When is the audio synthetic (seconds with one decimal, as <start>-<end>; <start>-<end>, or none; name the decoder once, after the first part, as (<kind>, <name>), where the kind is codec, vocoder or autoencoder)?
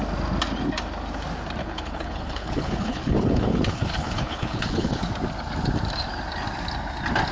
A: 1.6-5.0 (codec, HILCodec)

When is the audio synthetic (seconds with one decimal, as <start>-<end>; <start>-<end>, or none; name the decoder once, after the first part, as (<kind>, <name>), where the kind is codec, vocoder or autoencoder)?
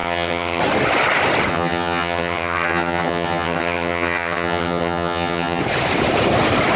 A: 0.0-0.6 (vocoder, HiFi-GAN); 1.5-5.6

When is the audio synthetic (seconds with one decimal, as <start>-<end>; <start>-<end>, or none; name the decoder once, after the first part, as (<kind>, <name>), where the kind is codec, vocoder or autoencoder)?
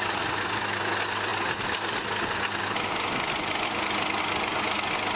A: none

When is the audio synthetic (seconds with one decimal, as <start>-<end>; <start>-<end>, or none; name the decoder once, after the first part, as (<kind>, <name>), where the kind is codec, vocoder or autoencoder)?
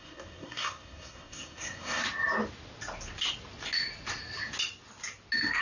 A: 0.0-2.0 (codec, SNAC)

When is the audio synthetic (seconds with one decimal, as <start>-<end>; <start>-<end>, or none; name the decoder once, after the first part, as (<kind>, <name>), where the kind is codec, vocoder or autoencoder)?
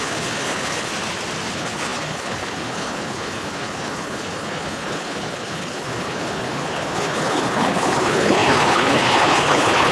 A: 0.0-0.9 (codec, HILCodec); 1.5-9.9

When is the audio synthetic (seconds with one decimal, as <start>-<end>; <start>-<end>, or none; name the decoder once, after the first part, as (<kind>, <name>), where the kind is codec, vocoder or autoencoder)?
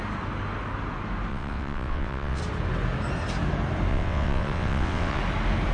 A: 1.3-2.4 (vocoder, WaveNeXt); 3.9-5.2